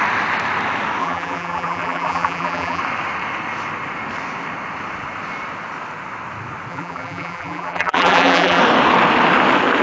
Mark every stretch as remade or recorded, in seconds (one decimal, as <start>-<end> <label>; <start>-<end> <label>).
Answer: 0.0-1.0 recorded; 1.0-2.8 remade; 2.8-6.7 recorded; 6.7-8.6 remade; 8.6-9.8 recorded